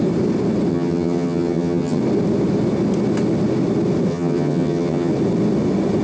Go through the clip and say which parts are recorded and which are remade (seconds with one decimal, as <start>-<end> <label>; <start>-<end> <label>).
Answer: 0.0-0.7 recorded; 0.7-2.0 remade; 2.0-4.1 recorded; 4.1-5.1 remade; 5.1-6.0 recorded